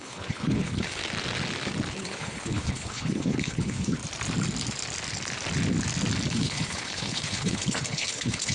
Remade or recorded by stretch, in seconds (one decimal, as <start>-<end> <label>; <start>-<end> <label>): 0.0-1.0 remade; 1.0-1.9 recorded; 1.9-4.0 remade; 4.0-6.3 recorded; 6.3-8.5 remade